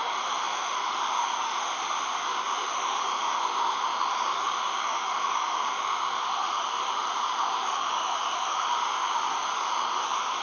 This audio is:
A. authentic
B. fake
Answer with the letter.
B